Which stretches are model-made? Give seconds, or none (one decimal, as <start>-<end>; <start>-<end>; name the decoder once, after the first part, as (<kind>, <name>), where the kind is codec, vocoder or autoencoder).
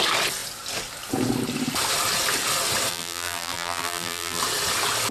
2.9-4.4 (vocoder, BigVGAN v2)